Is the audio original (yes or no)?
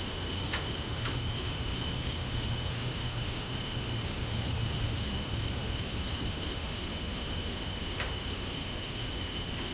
no